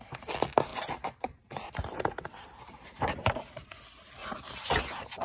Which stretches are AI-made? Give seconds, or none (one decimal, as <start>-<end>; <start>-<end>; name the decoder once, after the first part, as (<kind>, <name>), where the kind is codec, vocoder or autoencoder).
0.7-3.8 (vocoder, BigVGAN v2); 4.2-4.8